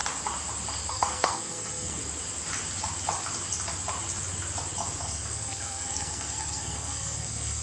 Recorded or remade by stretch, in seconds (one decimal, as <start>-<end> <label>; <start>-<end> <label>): 0.0-0.9 recorded; 0.9-2.0 remade; 2.0-5.0 recorded; 5.0-7.6 remade